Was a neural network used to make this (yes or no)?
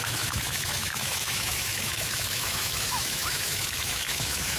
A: yes